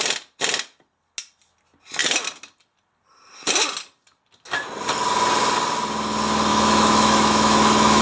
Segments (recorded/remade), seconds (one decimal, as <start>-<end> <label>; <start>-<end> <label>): 0.0-6.5 recorded; 6.5-8.0 remade